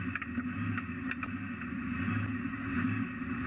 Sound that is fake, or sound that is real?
real